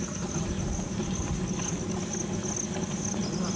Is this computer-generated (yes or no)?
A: no